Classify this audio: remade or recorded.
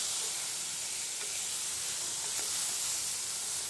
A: recorded